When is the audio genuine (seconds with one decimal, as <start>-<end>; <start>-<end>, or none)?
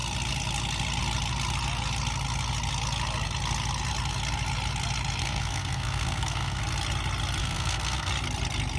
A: 0.0-5.2; 6.6-7.4; 8.1-8.8